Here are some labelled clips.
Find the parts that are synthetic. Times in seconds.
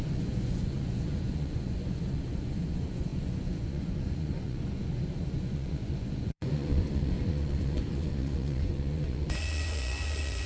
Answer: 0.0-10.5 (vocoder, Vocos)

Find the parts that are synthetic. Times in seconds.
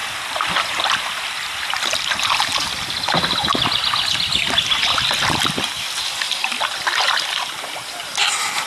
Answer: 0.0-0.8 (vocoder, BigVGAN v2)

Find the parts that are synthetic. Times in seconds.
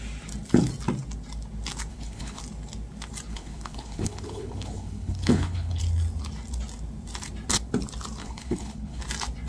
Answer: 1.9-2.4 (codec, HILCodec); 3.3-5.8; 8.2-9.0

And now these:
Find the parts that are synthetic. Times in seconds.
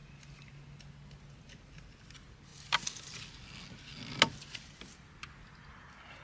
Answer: none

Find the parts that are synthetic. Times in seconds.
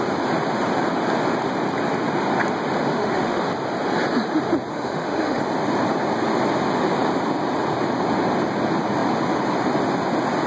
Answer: 2.8-3.4 (autoencoder, DAC-VAE); 4.7-5.4